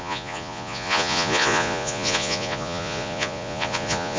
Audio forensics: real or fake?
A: fake